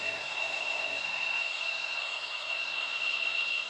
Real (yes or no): no